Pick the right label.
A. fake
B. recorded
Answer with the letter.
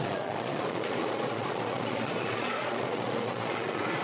A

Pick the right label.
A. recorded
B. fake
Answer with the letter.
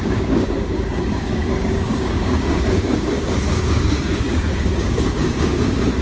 B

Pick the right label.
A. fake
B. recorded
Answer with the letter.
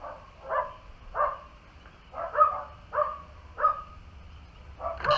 B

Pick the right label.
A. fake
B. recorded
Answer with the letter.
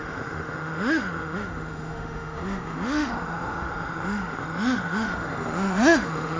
A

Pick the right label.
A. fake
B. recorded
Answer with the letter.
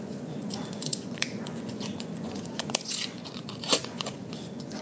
A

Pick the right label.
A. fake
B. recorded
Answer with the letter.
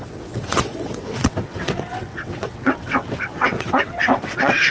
A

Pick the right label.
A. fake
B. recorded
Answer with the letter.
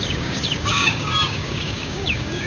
A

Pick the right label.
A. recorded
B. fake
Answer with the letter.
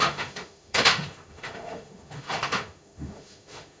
B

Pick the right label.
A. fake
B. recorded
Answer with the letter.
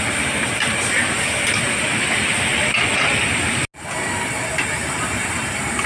B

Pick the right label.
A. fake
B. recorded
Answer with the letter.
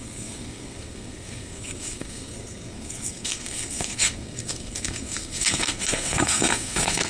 A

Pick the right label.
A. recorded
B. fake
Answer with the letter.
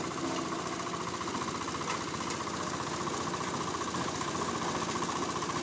A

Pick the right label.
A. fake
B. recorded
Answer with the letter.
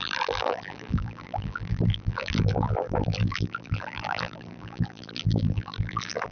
A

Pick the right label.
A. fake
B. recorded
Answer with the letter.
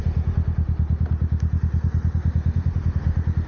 B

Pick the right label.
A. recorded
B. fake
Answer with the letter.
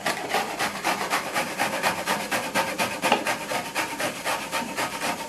B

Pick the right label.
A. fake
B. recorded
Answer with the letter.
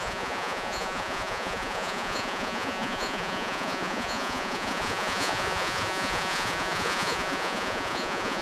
A